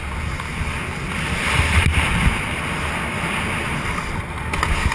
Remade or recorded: recorded